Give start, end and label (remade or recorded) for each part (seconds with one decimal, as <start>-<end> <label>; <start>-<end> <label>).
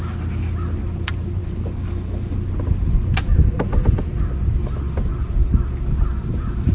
0.0-6.1 recorded; 6.1-6.7 remade